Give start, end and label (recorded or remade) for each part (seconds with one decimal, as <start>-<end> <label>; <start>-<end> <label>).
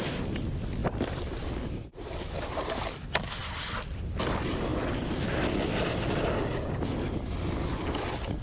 0.0-8.4 recorded